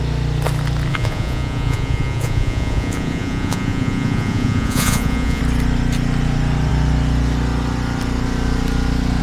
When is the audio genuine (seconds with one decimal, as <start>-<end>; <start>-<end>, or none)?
0.0-0.9; 5.4-9.2